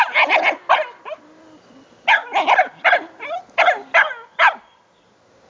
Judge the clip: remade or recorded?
recorded